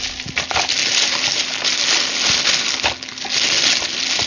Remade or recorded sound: recorded